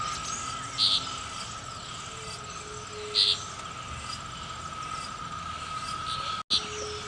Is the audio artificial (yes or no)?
no